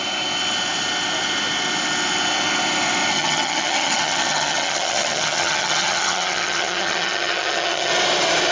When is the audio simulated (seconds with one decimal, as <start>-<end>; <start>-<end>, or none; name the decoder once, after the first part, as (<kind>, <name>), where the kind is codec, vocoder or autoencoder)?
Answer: 3.1-7.9 (vocoder, HiFi-GAN)